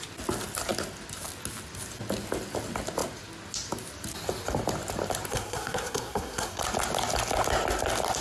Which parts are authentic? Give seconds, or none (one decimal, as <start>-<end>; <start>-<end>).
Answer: 0.0-5.3; 6.6-8.2